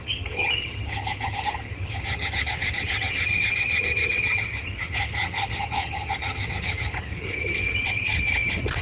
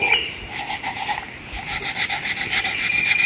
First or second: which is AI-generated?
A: first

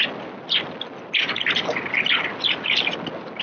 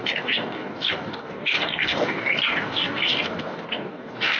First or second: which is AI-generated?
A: second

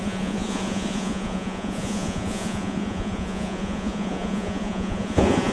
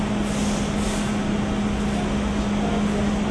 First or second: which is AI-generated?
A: first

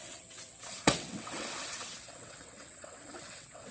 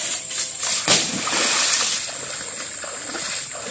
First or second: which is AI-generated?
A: first